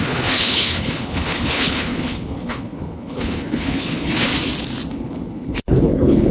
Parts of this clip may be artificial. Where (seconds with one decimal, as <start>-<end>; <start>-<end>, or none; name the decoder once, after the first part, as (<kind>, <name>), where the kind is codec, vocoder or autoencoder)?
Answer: 0.0-4.3 (codec, HILCodec); 4.9-6.3